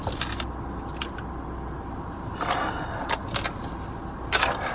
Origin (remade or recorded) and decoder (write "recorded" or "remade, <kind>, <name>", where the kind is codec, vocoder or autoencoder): recorded